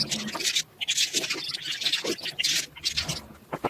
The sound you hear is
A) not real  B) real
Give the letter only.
B